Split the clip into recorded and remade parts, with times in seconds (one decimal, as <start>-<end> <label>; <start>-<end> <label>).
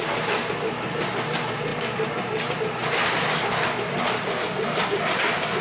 0.0-5.6 recorded